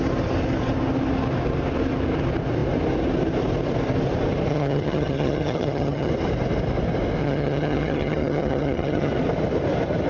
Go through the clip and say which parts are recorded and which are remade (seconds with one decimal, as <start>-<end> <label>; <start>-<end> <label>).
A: 0.0-4.5 recorded; 4.5-6.1 remade; 6.1-7.2 recorded; 7.2-9.1 remade; 9.1-10.1 recorded